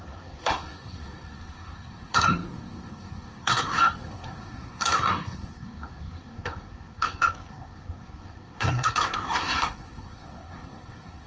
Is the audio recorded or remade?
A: remade